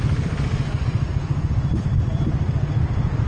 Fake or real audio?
fake